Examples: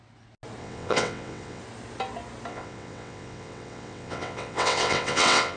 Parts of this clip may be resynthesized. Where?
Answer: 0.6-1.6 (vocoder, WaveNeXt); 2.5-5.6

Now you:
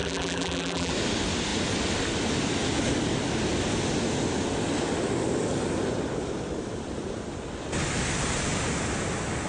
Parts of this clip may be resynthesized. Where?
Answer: 0.0-0.9 (vocoder, BigVGAN v2)

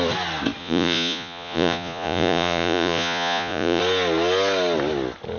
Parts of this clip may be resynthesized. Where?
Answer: 0.6-3.8 (vocoder, Vocos)

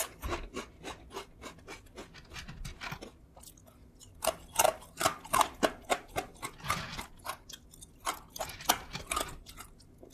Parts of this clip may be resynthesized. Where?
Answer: none

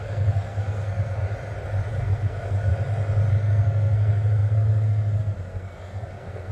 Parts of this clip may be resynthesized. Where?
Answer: 0.0-1.2 (codec, SNAC); 1.9-2.7; 3.3-6.5

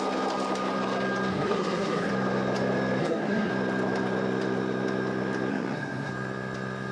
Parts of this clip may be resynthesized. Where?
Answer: 1.3-2.1 (codec, SNAC); 3.0-3.5; 5.5-6.1

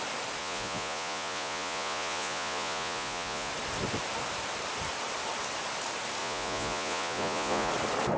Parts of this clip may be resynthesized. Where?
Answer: 0.4-3.5 (vocoder, Vocos); 6.2-7.7

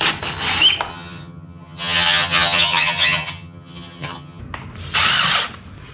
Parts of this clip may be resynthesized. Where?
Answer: 0.9-4.4 (vocoder, HiFi-GAN)